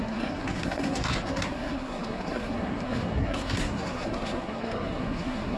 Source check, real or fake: fake